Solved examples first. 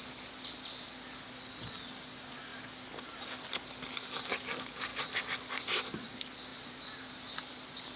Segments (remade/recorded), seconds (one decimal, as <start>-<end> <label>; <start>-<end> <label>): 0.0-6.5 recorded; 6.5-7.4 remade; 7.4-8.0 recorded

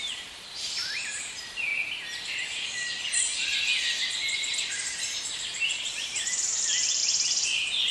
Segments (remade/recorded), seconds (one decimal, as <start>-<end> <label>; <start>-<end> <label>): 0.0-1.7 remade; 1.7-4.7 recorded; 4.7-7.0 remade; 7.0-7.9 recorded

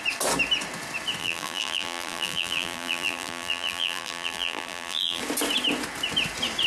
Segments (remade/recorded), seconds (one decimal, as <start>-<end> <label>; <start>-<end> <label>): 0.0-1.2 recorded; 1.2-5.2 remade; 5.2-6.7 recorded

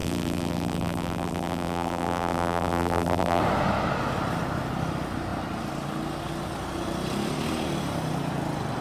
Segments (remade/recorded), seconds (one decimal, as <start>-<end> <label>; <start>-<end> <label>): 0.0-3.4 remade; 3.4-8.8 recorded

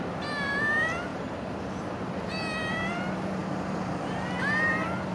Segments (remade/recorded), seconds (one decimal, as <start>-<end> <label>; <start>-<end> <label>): 0.0-3.4 remade; 3.4-4.0 recorded; 4.0-5.1 remade